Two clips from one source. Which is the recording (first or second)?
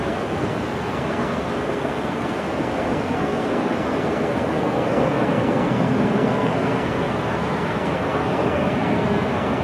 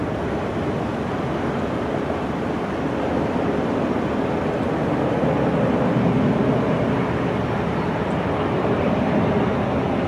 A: second